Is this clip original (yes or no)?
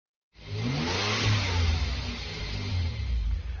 yes